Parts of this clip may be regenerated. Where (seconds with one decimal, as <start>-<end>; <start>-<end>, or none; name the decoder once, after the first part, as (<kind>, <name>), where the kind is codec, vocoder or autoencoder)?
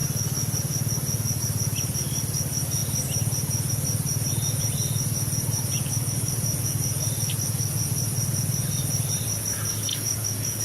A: 5.8-6.3 (codec, DAC); 9.9-10.6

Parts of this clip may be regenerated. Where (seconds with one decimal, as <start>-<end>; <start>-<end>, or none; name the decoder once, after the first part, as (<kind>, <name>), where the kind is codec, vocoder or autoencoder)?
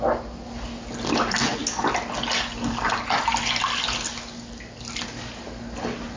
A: none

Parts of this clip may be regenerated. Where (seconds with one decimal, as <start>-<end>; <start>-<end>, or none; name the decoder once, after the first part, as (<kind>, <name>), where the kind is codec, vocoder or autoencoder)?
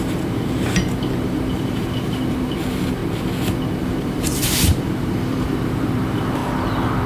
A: 0.0-3.0 (vocoder, BigVGAN v2); 3.8-6.4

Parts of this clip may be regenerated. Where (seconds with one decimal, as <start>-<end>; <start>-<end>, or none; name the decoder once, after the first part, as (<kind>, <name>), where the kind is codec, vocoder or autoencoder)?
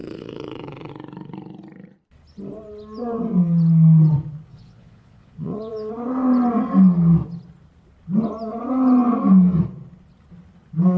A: 0.0-0.9 (vocoder, Vocos); 4.5-5.9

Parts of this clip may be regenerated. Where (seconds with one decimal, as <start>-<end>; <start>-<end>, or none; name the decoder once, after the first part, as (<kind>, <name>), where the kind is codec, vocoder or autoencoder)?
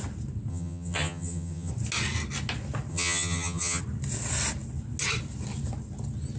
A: 0.5-1.7 (vocoder, HiFi-GAN); 2.9-3.8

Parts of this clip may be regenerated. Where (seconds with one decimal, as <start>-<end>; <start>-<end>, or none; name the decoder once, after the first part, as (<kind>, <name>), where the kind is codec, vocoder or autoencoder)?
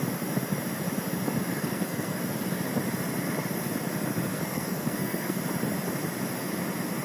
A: 1.5-2.2 (codec, SNAC); 4.3-5.4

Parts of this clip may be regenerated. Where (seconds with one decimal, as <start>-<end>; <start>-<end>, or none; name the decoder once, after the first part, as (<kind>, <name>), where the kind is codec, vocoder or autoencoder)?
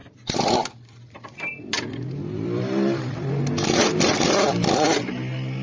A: 0.0-3.4 (vocoder, BigVGAN v2)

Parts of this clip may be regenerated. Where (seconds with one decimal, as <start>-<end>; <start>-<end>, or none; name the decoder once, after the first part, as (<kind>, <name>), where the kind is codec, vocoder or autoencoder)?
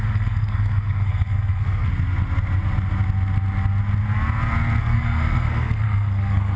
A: 0.0-1.9 (codec, SNAC); 4.8-6.6